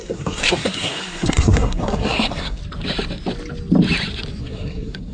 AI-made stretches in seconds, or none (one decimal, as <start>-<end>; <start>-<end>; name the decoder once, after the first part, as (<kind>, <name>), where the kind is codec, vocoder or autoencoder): 0.0-2.6 (codec, SNAC); 4.4-5.1